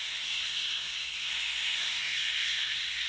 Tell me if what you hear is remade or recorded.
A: remade